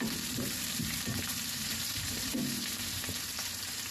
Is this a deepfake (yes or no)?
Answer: yes